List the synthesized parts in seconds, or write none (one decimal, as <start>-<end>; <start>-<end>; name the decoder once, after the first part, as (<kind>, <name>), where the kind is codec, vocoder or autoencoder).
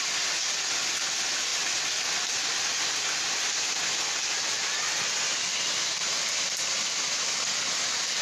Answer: none